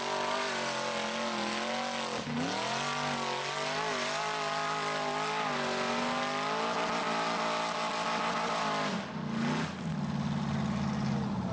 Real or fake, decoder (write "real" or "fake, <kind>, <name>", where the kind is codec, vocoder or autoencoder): real